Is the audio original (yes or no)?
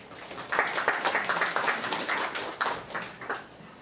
yes